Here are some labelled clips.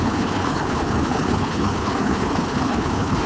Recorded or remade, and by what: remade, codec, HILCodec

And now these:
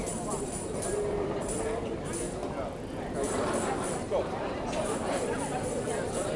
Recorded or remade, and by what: remade, vocoder, BigVGAN v2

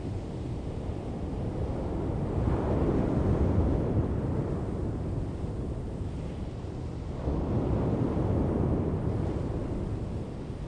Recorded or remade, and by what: recorded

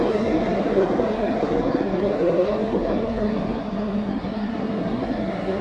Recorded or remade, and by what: remade, codec, SNAC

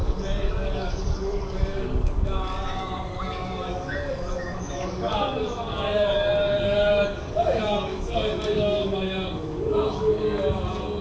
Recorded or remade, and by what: remade, codec, DAC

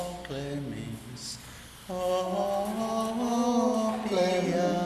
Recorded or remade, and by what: recorded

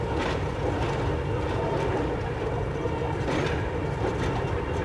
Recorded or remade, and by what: recorded